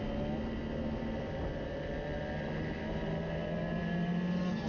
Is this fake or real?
real